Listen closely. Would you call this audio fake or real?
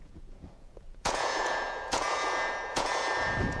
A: fake